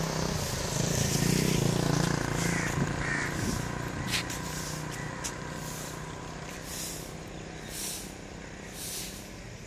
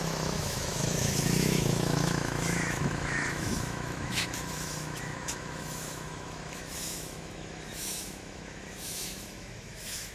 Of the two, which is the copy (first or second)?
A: second